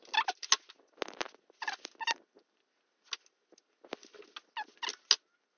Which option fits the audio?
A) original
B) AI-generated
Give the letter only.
A